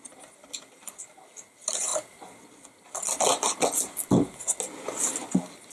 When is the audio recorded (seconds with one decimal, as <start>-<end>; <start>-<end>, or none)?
0.0-5.7